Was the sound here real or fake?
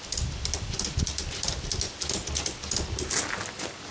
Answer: real